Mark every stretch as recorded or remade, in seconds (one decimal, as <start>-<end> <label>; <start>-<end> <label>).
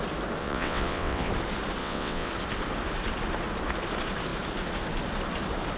0.0-0.4 recorded; 0.4-1.3 remade; 1.3-1.8 recorded; 1.8-2.3 remade; 2.3-5.8 recorded